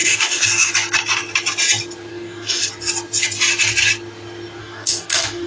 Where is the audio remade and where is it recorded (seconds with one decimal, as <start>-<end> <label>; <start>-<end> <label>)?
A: 0.0-0.7 remade; 0.7-2.1 recorded; 2.1-2.7 remade; 2.7-4.6 recorded; 4.6-5.5 remade